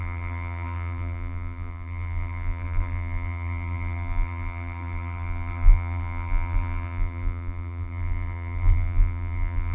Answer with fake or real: fake